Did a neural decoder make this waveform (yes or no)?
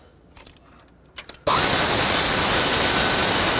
no